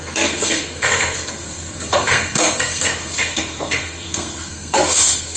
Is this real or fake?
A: fake